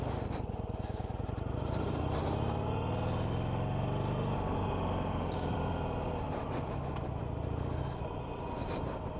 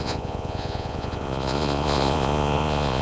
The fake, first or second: second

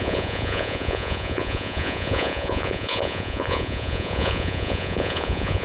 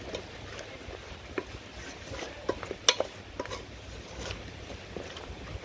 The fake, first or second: first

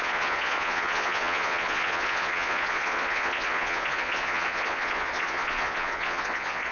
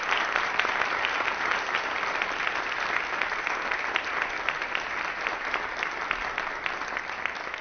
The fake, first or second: first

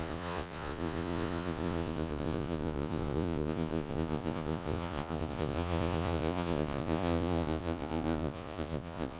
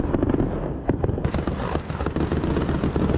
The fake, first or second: first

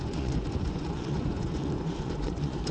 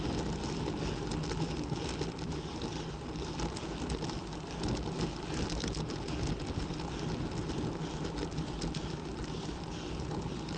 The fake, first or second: first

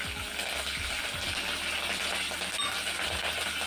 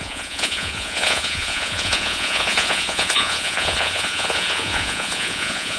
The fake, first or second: second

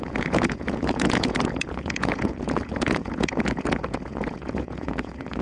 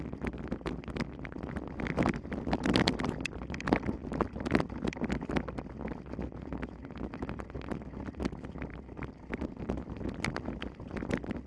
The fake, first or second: first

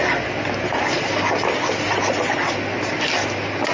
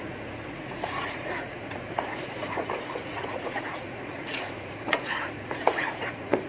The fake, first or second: second